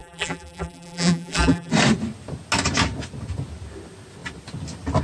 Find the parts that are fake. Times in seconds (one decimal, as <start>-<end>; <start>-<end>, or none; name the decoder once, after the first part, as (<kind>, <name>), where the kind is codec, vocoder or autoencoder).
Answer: 0.0-1.7 (vocoder, BigVGAN v2)